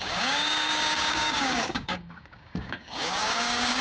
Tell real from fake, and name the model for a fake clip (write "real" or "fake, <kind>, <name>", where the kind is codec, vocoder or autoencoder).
fake, codec, DAC